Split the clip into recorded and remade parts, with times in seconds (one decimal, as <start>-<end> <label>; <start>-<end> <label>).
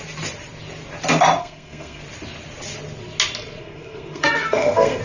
0.0-1.4 recorded; 1.4-2.0 remade; 2.0-3.6 recorded; 3.6-5.0 remade